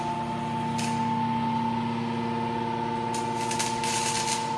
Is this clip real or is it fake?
real